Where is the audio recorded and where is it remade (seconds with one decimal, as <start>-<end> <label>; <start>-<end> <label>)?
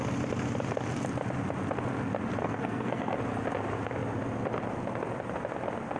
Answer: 0.0-2.4 recorded; 2.4-3.2 remade; 3.2-6.0 recorded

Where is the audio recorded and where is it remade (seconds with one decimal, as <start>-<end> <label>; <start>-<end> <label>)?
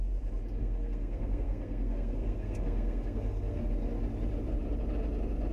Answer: 0.0-0.6 recorded; 0.6-3.6 remade; 3.6-5.5 recorded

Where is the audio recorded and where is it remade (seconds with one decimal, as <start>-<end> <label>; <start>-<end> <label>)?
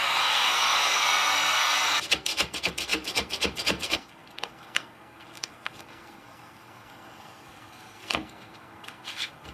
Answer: 0.0-9.5 remade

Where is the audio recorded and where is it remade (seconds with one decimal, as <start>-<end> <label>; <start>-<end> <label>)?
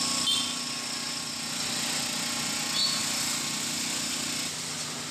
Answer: 0.0-5.1 recorded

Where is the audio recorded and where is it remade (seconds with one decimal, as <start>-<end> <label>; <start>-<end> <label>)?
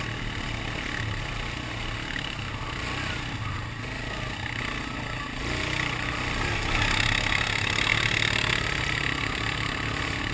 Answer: 0.0-10.3 recorded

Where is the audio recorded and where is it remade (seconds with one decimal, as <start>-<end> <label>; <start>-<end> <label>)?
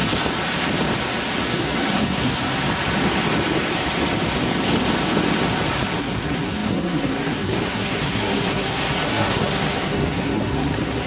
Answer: 0.0-1.5 recorded; 1.5-2.6 remade; 2.6-6.0 recorded; 6.0-11.1 remade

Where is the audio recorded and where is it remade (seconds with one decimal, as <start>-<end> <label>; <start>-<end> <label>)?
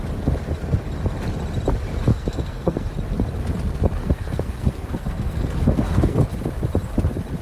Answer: 0.0-2.1 recorded; 2.1-2.9 remade; 2.9-4.0 recorded; 4.0-6.2 remade; 6.2-7.4 recorded